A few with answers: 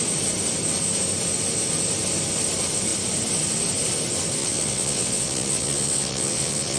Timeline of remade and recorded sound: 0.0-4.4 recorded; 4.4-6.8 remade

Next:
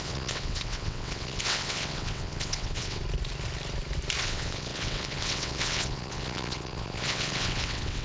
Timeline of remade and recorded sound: 0.0-3.0 remade; 3.0-4.2 recorded; 4.2-8.0 remade

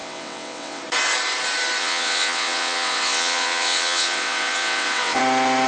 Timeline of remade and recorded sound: 0.0-0.8 remade; 0.8-1.8 recorded; 1.8-5.2 remade; 5.2-5.7 recorded

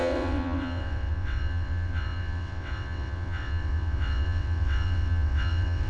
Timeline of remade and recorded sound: 0.0-5.9 remade

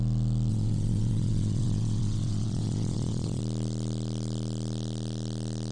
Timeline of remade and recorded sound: 0.0-0.5 recorded; 0.5-3.4 remade; 3.4-5.7 recorded